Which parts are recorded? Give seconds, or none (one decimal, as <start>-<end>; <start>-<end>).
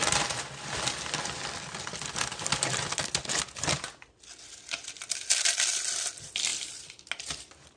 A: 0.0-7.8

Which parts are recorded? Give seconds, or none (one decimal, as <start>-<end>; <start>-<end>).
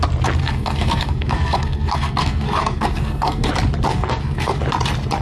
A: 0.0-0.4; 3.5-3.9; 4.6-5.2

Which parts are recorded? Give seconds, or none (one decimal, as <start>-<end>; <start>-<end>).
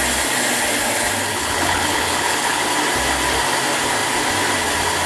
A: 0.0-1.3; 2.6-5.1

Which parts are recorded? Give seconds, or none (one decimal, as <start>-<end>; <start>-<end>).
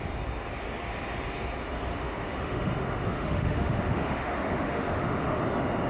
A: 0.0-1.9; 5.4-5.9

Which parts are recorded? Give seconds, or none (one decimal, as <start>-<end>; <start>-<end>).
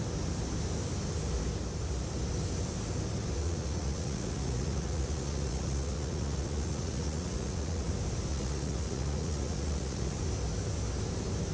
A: 0.0-3.4; 7.9-8.3; 10.2-11.5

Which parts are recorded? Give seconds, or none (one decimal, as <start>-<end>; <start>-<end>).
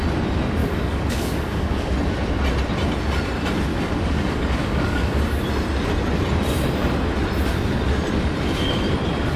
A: 0.0-0.6; 1.9-3.7; 5.2-9.4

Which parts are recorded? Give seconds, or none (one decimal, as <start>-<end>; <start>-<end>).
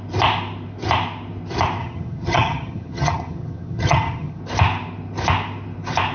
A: 0.0-1.8; 4.4-6.1